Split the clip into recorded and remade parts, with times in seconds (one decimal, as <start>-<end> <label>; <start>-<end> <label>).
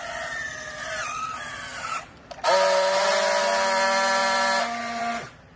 0.0-1.7 recorded; 1.7-3.1 remade; 3.1-5.6 recorded